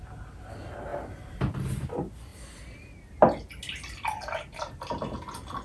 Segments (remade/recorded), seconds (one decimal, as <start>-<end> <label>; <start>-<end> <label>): 0.0-5.6 recorded